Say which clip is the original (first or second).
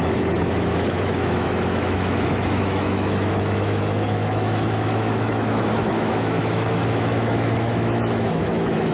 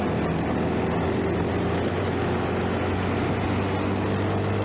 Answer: second